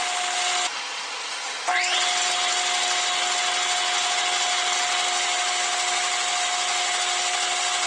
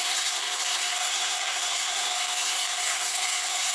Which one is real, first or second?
first